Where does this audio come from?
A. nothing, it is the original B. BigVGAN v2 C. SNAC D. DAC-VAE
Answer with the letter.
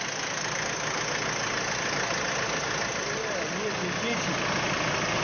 A